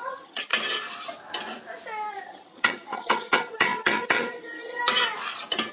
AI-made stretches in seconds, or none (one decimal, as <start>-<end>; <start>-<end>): 0.0-0.5; 2.1-4.8